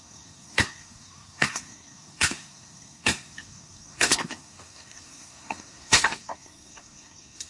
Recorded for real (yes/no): no